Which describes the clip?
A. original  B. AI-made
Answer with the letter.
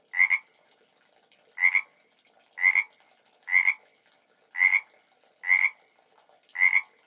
A